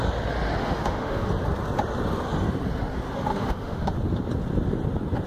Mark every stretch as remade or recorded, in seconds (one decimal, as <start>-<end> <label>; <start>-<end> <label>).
0.0-0.6 recorded; 0.6-1.3 remade; 1.3-3.3 recorded; 3.3-3.9 remade; 3.9-5.3 recorded